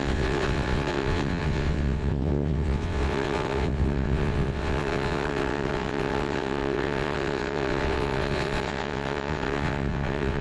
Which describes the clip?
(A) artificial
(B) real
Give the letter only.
A